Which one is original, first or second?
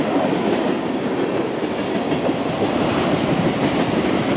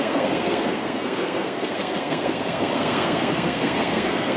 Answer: first